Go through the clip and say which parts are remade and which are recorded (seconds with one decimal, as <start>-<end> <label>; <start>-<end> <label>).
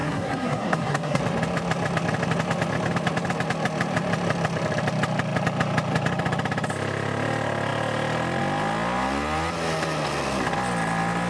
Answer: 0.0-1.2 remade; 1.2-11.3 recorded